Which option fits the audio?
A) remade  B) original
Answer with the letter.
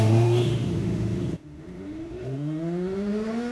A